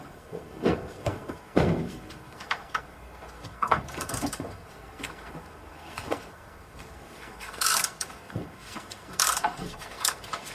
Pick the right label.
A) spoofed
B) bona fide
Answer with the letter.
A